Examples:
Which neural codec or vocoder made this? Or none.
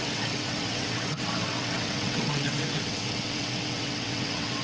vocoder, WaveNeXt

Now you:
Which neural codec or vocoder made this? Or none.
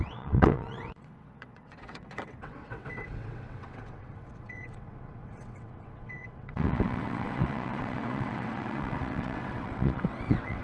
vocoder, WaveNeXt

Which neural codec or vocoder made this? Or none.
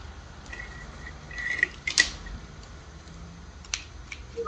none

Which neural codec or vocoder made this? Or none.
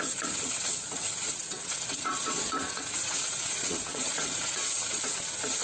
vocoder, WaveNeXt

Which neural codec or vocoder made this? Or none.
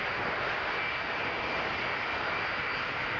none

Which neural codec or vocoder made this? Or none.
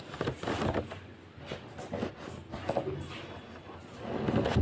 none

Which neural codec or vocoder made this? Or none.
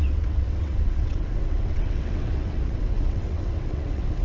vocoder, WaveNeXt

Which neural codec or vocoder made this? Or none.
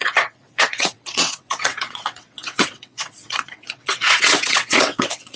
vocoder, WaveNeXt